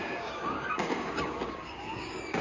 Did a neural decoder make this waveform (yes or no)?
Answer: yes